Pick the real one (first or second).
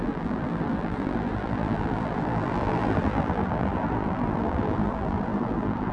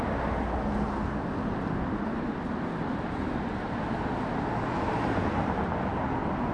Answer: second